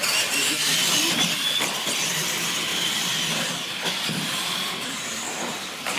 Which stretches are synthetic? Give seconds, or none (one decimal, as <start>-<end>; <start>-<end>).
none